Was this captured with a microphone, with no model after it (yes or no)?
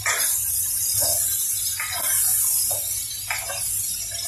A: yes